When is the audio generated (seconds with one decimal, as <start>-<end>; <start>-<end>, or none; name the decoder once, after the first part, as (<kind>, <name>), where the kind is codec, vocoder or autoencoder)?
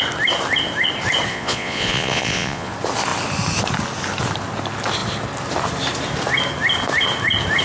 1.3-2.7 (vocoder, Vocos)